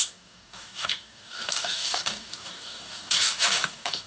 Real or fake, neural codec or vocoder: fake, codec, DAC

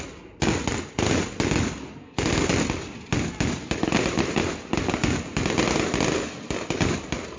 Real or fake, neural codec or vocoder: real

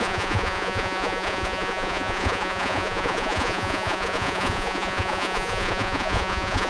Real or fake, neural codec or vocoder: fake, vocoder, Vocos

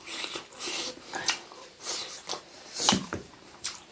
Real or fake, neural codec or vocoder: fake, vocoder, BigVGAN v2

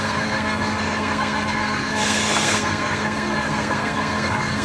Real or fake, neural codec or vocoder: fake, codec, SNAC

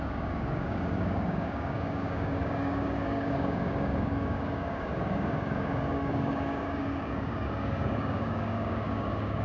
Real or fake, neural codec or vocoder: fake, codec, DAC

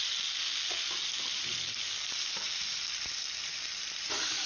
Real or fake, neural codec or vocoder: real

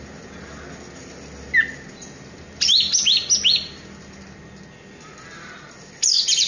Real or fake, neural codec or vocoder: real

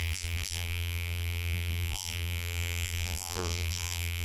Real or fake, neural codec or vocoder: fake, vocoder, BigVGAN v2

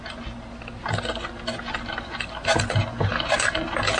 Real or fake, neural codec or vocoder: real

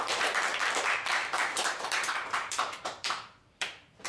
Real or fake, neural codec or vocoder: fake, vocoder, BigVGAN v2